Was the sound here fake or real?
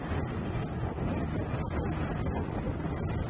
real